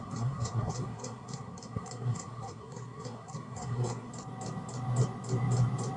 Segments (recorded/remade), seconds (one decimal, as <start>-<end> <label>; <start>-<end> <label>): 0.0-4.1 remade; 4.1-6.0 recorded